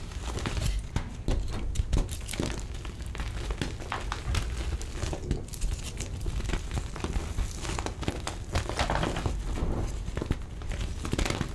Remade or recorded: recorded